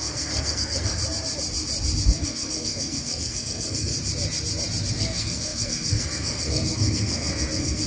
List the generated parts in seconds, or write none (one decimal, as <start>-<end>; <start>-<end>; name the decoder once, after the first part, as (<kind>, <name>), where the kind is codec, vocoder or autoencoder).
0.0-1.0 (codec, SNAC); 2.0-3.9; 4.9-7.9